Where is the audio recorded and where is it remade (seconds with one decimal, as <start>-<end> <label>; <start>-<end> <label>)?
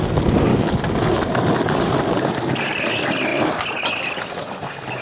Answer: 0.0-0.5 recorded; 0.5-1.3 remade; 1.3-5.0 recorded